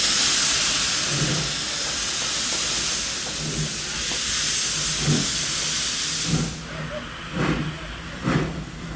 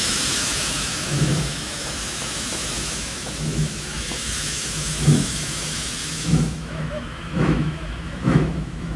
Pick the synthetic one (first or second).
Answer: second